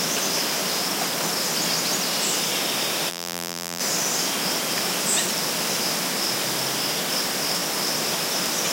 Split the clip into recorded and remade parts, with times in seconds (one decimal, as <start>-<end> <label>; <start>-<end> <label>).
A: 0.0-3.1 recorded; 3.1-3.8 remade; 3.8-8.7 recorded